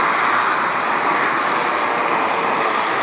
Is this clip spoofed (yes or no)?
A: no